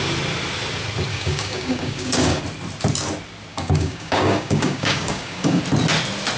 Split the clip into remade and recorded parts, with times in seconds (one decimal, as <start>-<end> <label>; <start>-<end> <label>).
0.0-1.1 recorded; 1.1-2.4 remade; 2.4-3.5 recorded; 3.5-5.6 remade; 5.6-6.4 recorded